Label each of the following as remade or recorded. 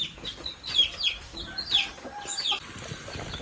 recorded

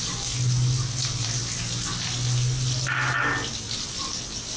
recorded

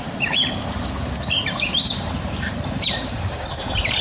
remade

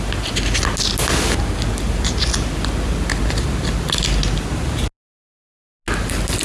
recorded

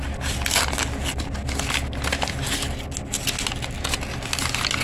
recorded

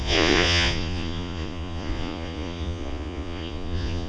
remade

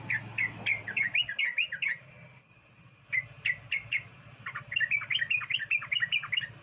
recorded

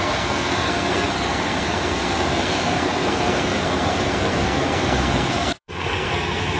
remade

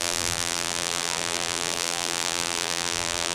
remade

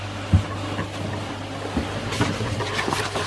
recorded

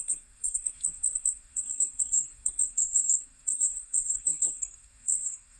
remade